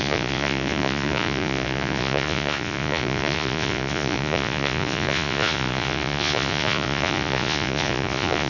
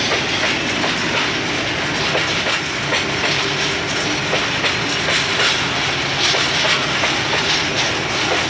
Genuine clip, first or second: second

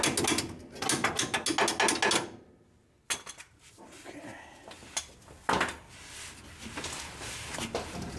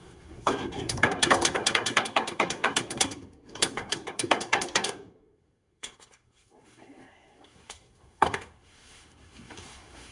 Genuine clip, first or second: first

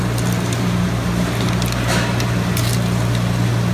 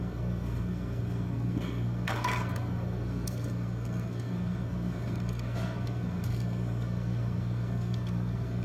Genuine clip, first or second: first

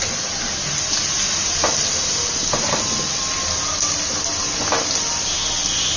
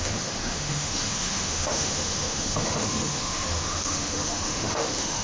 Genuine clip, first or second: first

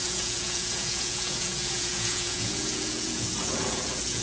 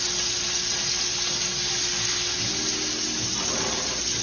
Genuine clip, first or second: second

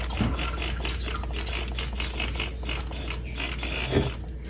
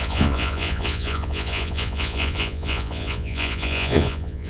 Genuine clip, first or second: first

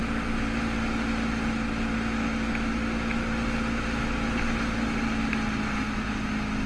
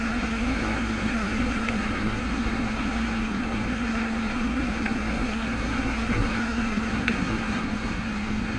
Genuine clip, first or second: first